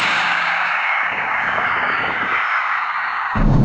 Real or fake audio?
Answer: fake